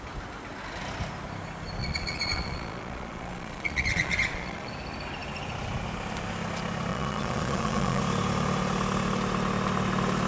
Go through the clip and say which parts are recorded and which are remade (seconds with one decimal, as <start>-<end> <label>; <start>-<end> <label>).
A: 0.0-1.8 recorded; 1.8-4.7 remade; 4.7-6.9 recorded; 6.9-8.0 remade; 8.0-10.3 recorded